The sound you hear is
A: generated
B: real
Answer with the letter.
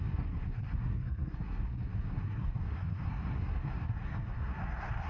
A